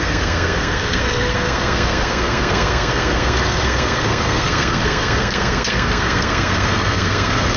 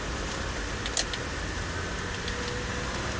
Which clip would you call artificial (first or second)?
first